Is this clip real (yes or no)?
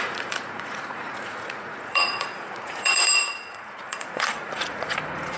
no